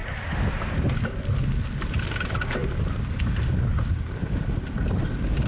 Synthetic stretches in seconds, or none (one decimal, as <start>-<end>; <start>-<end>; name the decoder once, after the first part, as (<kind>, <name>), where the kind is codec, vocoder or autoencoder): none